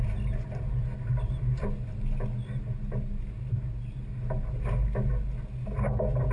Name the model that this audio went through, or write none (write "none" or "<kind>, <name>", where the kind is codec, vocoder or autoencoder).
none